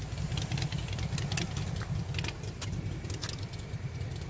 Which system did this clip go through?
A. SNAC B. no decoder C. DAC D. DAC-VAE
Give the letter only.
B